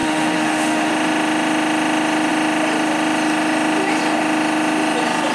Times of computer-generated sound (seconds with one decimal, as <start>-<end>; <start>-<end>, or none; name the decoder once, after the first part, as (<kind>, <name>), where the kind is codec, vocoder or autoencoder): 0.0-0.9 (autoencoder, DAC-VAE)